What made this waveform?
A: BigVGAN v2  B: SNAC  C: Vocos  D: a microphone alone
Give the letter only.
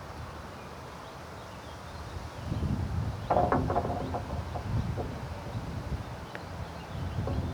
D